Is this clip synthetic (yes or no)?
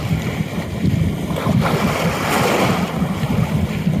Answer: no